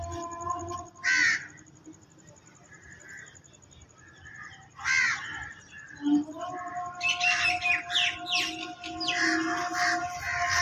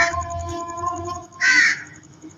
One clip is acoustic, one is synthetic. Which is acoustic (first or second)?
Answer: first